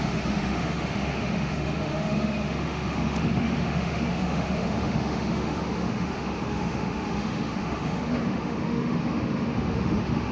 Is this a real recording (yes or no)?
no